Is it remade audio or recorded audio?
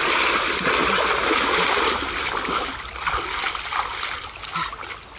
recorded